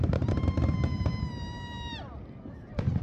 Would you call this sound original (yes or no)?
yes